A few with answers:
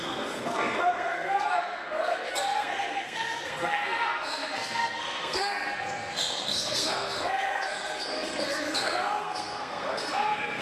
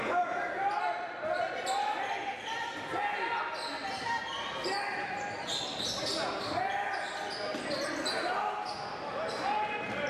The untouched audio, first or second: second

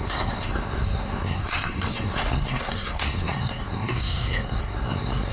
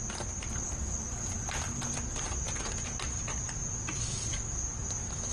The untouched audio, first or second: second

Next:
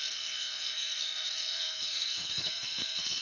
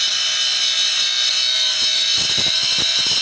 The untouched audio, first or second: second